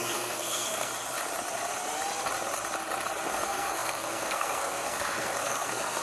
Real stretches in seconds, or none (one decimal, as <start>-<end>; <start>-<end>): 0.9-3.3